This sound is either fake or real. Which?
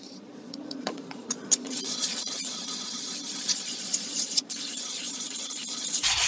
fake